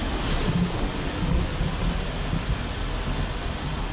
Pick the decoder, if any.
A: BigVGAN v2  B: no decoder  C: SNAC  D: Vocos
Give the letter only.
B